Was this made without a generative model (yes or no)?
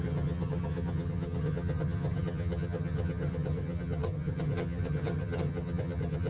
no